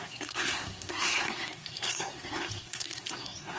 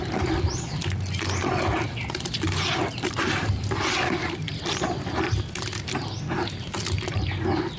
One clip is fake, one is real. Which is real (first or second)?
second